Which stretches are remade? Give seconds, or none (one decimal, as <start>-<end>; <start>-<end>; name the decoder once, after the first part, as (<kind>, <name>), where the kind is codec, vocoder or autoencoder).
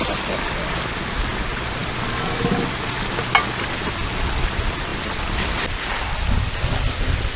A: none